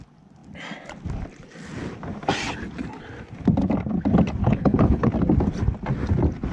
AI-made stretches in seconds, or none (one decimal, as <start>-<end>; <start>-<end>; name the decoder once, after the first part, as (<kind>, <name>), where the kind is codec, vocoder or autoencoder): 4.4-5.1 (codec, HILCodec)